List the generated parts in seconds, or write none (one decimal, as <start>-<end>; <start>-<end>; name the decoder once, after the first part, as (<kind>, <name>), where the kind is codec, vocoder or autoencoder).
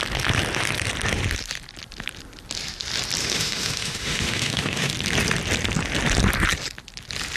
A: 3.2-4.9 (autoencoder, DAC-VAE)